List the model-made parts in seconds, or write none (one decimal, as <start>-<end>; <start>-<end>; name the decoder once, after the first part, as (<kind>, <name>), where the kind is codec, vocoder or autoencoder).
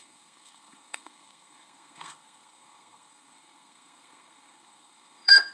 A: 0.0-5.5 (codec, SNAC)